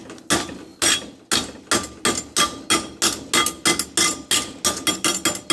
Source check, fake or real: real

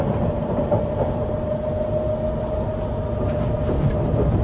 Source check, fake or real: real